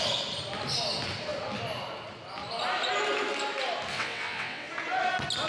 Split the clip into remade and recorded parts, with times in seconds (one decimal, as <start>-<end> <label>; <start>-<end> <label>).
0.0-3.9 recorded; 3.9-4.7 remade; 4.7-5.5 recorded